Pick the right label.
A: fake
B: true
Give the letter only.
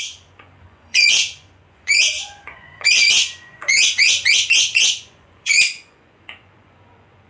A